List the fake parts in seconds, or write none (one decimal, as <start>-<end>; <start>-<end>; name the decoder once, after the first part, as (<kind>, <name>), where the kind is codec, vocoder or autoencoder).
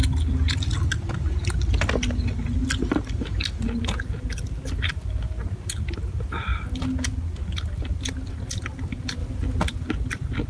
none